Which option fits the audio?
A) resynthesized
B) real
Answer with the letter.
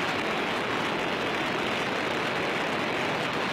B